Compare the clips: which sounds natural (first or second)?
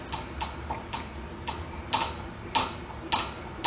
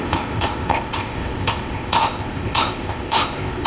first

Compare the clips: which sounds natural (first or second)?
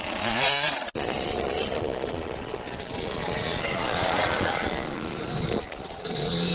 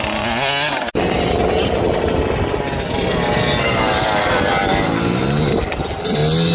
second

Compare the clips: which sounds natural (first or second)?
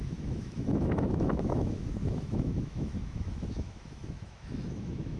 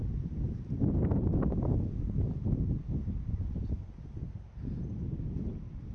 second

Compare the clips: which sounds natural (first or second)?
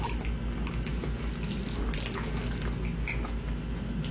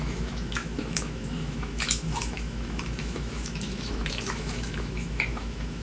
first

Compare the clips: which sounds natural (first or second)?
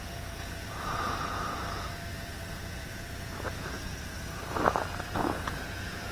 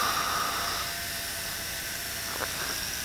second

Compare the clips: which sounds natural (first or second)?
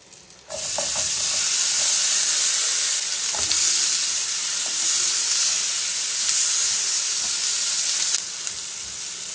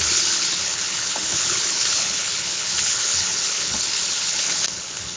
first